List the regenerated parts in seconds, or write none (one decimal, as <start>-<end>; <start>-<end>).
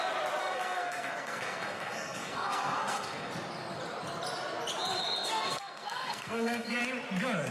0.4-3.3; 5.0-6.8